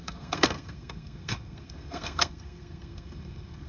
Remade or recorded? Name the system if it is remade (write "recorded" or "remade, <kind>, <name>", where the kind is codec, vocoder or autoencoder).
remade, codec, SNAC